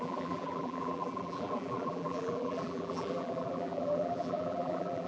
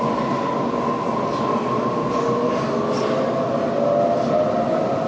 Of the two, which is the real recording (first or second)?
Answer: second